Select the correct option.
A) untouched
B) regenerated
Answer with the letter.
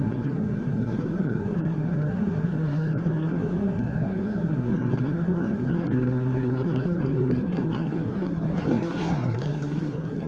B